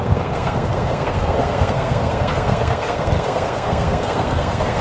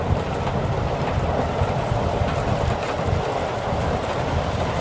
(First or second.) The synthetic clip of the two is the first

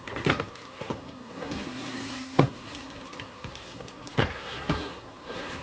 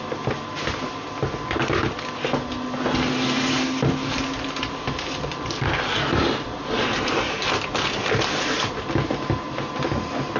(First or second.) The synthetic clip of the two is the first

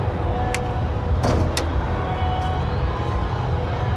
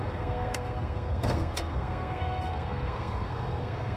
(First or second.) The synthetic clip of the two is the second